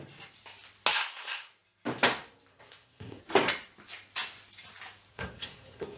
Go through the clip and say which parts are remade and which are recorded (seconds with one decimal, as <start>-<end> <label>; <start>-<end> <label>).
0.0-0.9 recorded; 0.9-1.5 remade; 1.5-2.5 recorded; 2.5-3.2 remade; 3.2-5.1 recorded; 5.1-6.0 remade